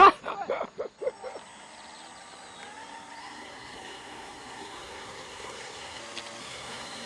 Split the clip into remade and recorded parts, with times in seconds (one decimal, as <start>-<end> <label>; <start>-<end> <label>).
0.0-3.2 recorded; 3.2-6.0 remade; 6.0-6.4 recorded; 6.4-7.1 remade